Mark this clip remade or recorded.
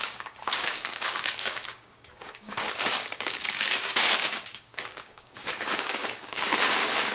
remade